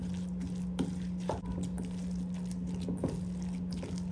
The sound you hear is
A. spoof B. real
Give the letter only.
B